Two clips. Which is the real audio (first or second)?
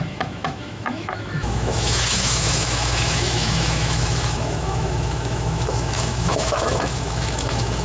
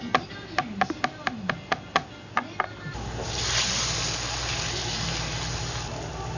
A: second